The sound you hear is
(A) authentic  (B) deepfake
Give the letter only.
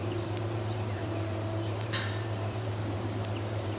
B